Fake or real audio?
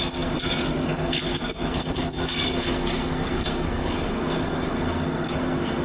fake